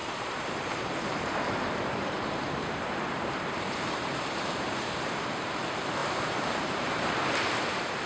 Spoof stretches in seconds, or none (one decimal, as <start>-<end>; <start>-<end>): 0.0-4.9; 6.0-7.1